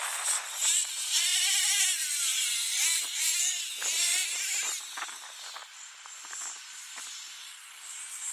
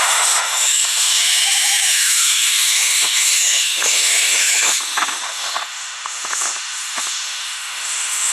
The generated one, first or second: second